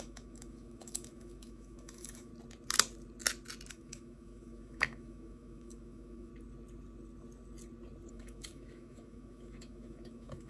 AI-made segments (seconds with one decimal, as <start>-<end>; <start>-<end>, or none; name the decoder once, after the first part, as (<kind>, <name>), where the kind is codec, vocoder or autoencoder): 0.0-2.3 (autoencoder, DAC-VAE); 3.7-6.3; 8.1-10.5